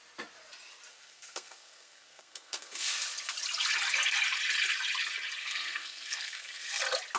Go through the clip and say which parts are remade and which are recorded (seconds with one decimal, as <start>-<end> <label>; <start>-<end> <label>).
0.0-0.9 recorded; 0.9-2.9 remade; 2.9-5.4 recorded; 5.4-6.8 remade; 6.8-7.2 recorded

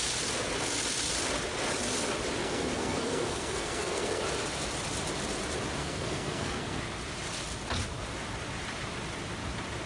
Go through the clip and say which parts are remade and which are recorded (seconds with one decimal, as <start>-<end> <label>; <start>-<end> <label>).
0.0-2.4 recorded; 2.4-4.2 remade; 4.2-5.8 recorded; 5.8-6.8 remade; 6.8-9.9 recorded